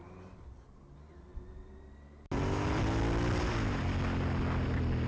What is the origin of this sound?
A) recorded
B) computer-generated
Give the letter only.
A